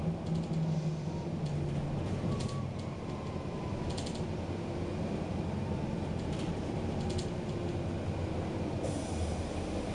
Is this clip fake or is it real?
real